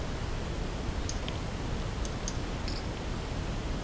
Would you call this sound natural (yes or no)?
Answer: yes